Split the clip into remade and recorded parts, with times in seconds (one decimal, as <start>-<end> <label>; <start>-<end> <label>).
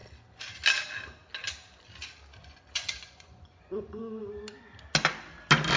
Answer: 0.0-2.4 recorded; 2.4-4.2 remade; 4.2-5.8 recorded